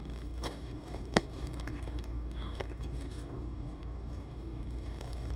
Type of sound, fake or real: fake